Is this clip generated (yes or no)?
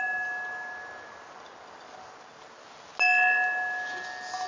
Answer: no